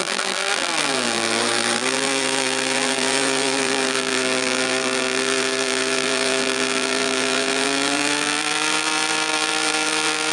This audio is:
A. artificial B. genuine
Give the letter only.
A